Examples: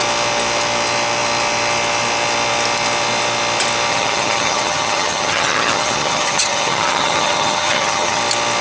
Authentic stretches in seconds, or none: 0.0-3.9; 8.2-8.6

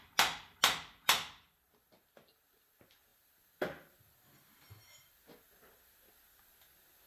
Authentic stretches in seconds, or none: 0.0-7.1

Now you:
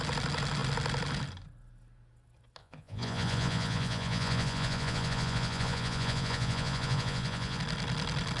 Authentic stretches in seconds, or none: 0.0-2.6; 7.6-8.4

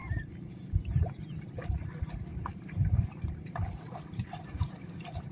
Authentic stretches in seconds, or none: 0.7-2.3